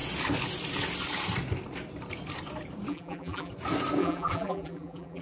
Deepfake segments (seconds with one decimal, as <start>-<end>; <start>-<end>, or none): 2.9-3.5; 4.0-5.2